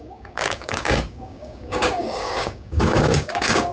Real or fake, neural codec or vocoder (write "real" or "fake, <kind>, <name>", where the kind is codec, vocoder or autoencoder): fake, codec, DAC